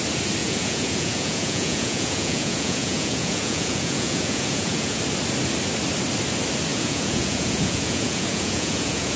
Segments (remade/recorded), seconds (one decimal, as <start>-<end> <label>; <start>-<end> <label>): 0.0-0.4 recorded; 0.4-5.0 remade; 5.0-6.7 recorded; 6.7-9.2 remade